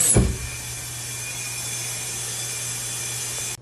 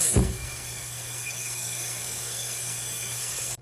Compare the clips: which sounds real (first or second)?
first